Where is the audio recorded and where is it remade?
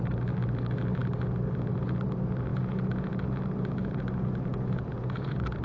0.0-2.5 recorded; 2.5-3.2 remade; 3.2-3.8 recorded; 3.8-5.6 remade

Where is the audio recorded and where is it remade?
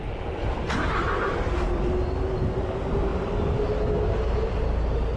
0.0-3.1 recorded; 3.1-4.4 remade; 4.4-5.2 recorded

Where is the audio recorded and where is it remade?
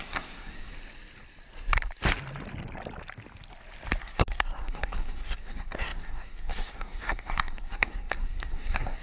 0.0-0.7 remade; 0.7-4.0 recorded; 4.0-9.0 remade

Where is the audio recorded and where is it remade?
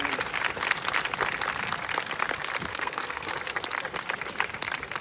0.0-2.7 recorded; 2.7-3.4 remade; 3.4-5.0 recorded